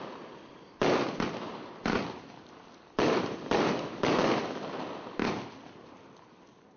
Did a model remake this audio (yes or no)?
no